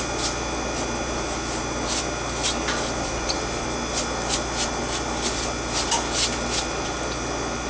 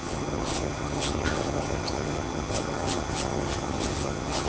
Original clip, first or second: first